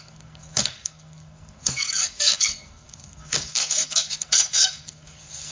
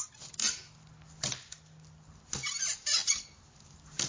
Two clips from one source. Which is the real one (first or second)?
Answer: second